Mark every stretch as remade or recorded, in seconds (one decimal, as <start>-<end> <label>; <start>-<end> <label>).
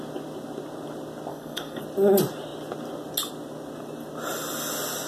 0.0-1.3 recorded; 1.3-1.8 remade; 1.8-5.1 recorded